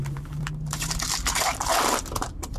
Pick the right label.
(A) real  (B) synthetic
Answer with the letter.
B